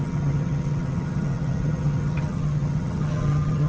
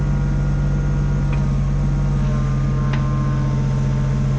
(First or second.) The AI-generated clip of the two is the first